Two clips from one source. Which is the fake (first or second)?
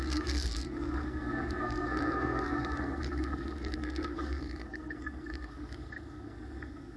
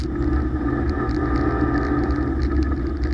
first